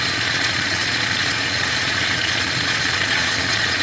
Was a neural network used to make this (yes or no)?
yes